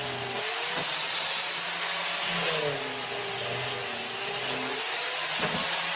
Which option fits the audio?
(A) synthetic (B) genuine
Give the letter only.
B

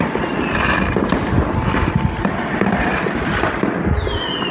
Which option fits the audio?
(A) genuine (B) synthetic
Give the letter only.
A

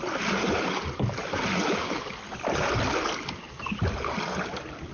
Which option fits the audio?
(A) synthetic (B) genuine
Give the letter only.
B